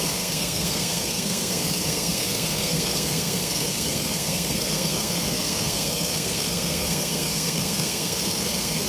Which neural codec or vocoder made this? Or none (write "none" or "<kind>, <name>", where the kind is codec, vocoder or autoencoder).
codec, SNAC